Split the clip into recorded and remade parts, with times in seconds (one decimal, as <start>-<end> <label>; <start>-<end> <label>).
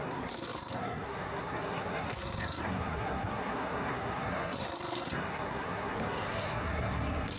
0.0-7.4 remade